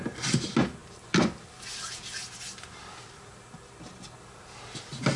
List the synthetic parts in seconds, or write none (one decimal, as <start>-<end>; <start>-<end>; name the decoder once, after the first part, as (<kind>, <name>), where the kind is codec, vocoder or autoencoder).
none